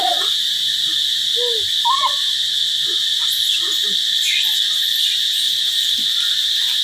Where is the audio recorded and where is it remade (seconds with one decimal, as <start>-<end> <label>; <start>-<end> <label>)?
0.0-6.8 recorded